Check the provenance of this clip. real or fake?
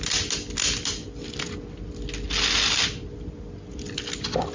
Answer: real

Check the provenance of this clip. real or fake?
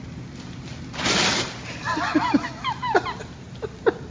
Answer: real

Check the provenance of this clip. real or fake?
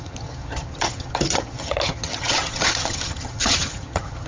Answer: fake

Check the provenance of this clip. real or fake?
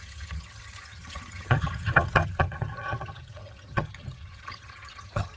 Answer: fake